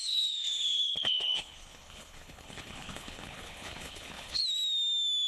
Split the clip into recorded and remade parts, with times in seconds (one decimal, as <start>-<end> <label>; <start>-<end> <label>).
0.0-4.4 remade; 4.4-5.3 recorded